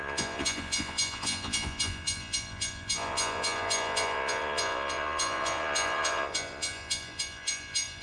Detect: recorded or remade remade